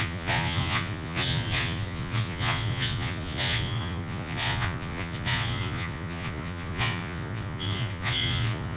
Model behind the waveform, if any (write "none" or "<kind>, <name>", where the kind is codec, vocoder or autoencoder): vocoder, Vocos